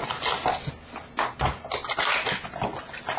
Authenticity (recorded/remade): recorded